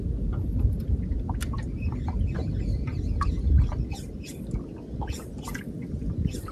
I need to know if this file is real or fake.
real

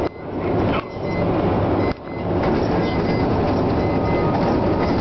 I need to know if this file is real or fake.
real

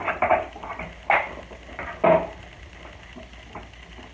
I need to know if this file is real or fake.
real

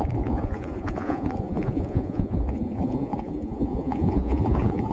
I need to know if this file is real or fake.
fake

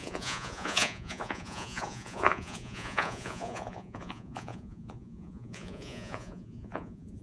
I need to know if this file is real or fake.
fake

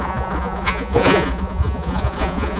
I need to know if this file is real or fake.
fake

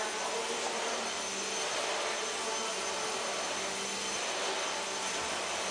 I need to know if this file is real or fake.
real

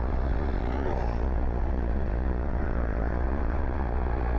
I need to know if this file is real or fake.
fake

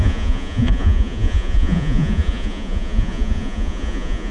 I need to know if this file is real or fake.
fake